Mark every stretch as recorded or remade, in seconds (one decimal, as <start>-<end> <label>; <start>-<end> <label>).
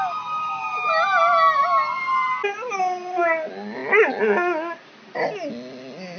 0.0-6.2 recorded